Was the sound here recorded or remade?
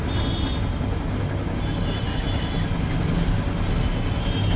recorded